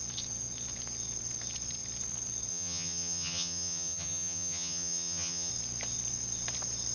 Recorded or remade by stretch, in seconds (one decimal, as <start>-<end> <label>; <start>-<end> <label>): 0.0-2.5 recorded; 2.5-5.5 remade; 5.5-6.9 recorded